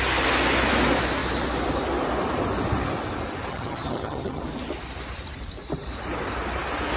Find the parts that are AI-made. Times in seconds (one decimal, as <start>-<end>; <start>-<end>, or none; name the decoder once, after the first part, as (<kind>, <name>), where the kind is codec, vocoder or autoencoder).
3.5-4.4 (vocoder, HiFi-GAN)